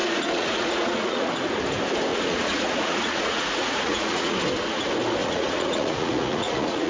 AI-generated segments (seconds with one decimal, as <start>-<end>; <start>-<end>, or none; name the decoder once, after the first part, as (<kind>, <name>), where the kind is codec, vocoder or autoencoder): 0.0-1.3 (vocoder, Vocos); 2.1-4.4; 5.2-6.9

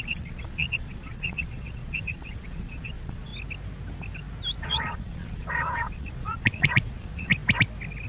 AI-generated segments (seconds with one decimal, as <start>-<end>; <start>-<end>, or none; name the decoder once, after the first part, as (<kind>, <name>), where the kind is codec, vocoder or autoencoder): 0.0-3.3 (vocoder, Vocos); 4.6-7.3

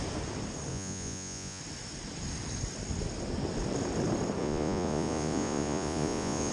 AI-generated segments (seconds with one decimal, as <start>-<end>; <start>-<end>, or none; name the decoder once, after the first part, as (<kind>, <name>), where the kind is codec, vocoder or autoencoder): 0.7-1.6 (vocoder, Vocos); 4.4-6.5

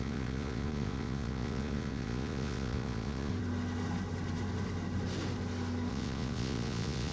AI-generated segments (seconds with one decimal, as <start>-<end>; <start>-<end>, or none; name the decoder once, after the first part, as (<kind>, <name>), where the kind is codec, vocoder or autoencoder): 0.0-3.3 (vocoder, Vocos); 5.9-7.1

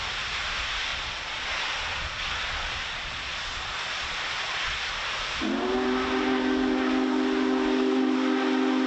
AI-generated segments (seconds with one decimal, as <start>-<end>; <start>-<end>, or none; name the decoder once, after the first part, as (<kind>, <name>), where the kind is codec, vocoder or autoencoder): 0.9-4.9 (vocoder, Vocos)

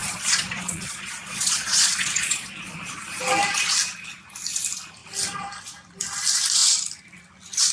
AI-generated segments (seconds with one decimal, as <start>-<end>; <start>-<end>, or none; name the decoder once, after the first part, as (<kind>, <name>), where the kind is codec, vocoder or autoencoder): 0.0-3.2 (vocoder, Vocos)